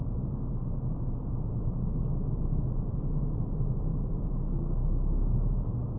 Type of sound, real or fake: fake